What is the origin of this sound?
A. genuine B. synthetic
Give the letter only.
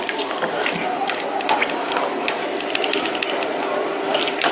A